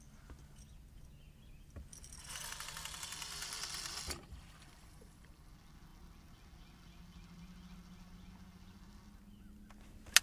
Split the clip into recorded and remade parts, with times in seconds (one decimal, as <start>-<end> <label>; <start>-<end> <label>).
0.0-1.9 recorded; 1.9-5.5 remade; 5.5-10.2 recorded